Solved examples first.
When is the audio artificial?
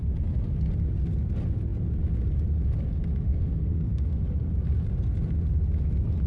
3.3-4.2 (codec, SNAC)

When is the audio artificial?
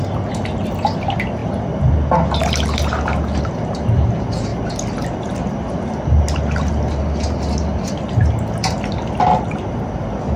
none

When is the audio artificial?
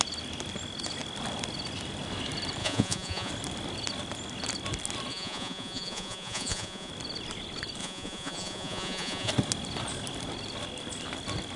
2.6-3.3 (vocoder, Vocos); 5.1-6.9; 7.8-9.3